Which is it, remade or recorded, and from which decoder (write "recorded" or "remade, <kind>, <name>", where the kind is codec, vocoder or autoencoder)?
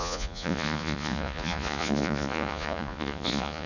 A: remade, vocoder, Vocos